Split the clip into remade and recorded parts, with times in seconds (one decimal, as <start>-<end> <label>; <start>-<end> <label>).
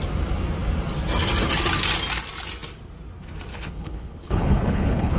0.0-3.5 recorded; 3.5-5.2 remade